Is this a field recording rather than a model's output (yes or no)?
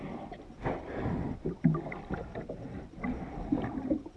yes